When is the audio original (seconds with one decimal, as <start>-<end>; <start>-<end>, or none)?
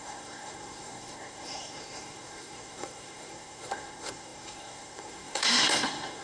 none